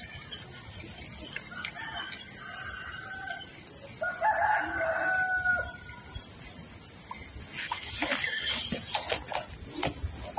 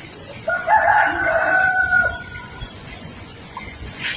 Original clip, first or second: first